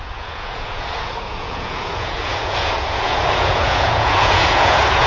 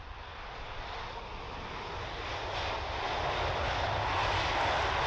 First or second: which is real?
second